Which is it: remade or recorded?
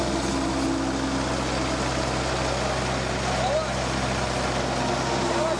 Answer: recorded